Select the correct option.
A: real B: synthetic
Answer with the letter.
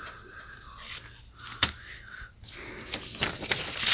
A